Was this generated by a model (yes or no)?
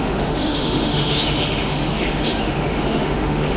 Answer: yes